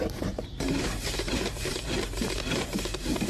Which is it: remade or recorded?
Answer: remade